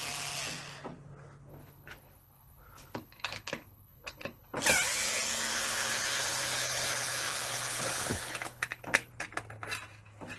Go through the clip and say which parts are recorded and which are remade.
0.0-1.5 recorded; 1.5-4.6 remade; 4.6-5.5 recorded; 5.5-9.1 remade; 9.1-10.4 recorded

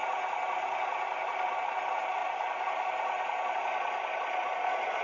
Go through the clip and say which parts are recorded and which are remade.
0.0-5.0 recorded